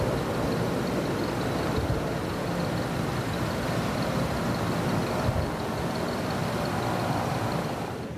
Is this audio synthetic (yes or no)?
yes